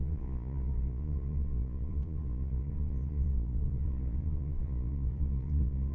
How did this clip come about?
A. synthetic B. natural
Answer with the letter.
A